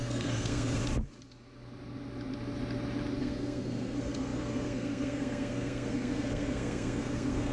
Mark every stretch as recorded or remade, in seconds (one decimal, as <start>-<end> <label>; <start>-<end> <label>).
0.0-0.8 remade; 0.8-3.2 recorded; 3.2-7.5 remade